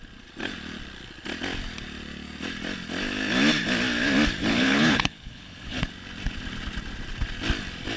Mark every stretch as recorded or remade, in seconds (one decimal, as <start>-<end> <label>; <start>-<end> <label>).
0.0-4.4 recorded; 4.4-5.9 remade; 5.9-8.0 recorded